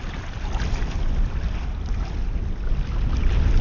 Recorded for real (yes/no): yes